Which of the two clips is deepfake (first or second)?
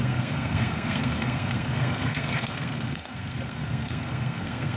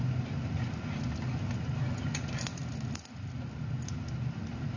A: first